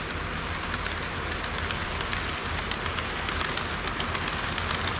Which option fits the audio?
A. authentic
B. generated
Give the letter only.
A